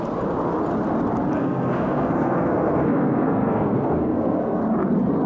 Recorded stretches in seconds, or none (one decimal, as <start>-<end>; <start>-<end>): 0.0-1.4; 4.6-5.3